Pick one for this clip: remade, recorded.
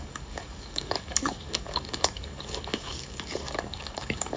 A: remade